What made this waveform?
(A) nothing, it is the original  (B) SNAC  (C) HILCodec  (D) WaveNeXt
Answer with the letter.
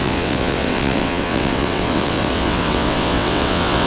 D